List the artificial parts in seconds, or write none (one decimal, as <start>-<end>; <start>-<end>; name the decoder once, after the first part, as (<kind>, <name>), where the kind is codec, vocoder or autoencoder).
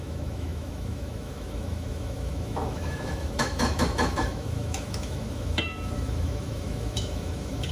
0.0-7.7 (autoencoder, DAC-VAE)